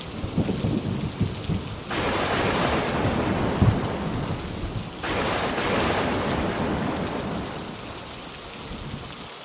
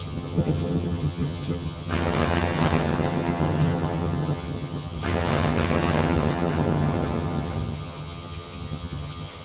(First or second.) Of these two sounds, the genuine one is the first